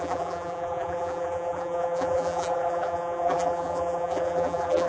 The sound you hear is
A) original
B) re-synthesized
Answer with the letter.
B